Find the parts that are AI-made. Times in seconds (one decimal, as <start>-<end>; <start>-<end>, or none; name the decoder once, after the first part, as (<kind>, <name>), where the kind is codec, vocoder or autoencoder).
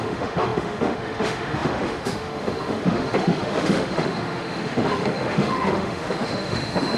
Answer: 0.0-7.0 (autoencoder, DAC-VAE)